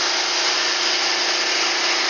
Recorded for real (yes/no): yes